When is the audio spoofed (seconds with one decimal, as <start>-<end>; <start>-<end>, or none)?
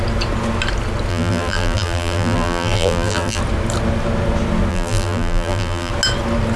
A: 1.1-3.4; 4.7-5.9